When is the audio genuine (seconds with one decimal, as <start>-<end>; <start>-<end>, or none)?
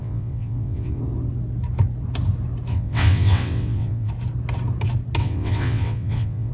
1.0-2.7; 4.1-5.2